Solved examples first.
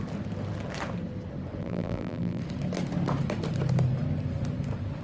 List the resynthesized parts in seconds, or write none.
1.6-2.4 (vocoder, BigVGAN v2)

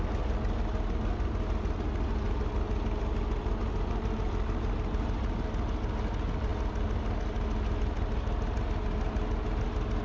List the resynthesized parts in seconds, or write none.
none

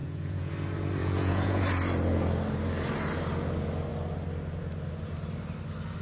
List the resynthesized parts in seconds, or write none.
0.0-0.5 (vocoder, Vocos); 1.0-1.6

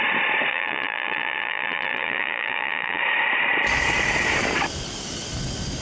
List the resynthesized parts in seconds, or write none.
0.5-3.0 (vocoder, Vocos)

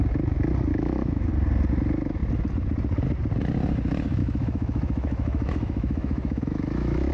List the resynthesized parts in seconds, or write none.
0.7-1.3 (autoencoder, DAC-VAE); 4.2-7.1